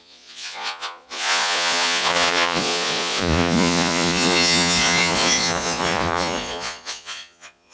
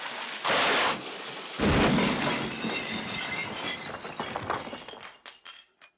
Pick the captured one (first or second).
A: second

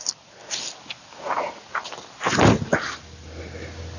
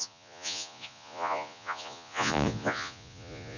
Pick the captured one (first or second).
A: first